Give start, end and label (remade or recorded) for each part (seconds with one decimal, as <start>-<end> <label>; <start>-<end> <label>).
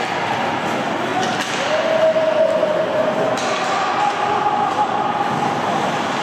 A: 0.0-6.2 recorded